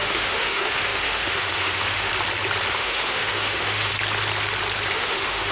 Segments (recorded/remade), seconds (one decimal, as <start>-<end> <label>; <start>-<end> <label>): 0.0-2.1 remade; 2.1-2.7 recorded; 2.7-3.9 remade; 3.9-4.9 recorded; 4.9-5.5 remade